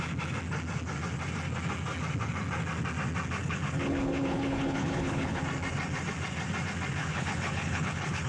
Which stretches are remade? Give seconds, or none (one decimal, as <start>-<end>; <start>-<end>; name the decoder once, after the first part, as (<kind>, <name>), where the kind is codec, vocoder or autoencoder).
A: 3.4-5.4 (codec, HILCodec); 7.0-8.3